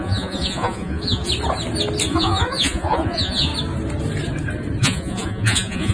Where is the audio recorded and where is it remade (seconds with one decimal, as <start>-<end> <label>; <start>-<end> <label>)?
0.0-1.3 remade; 1.3-2.1 recorded; 2.1-3.5 remade; 3.5-4.8 recorded; 4.8-5.9 remade